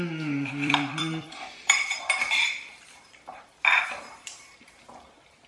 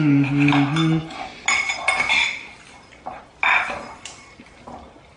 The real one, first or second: second